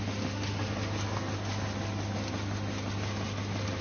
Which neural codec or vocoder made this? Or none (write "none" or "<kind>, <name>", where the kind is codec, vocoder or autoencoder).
none